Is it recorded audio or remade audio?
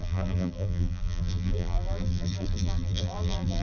remade